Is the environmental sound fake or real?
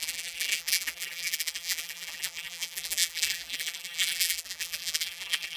fake